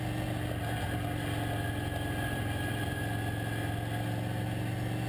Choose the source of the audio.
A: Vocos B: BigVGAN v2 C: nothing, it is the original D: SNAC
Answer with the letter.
C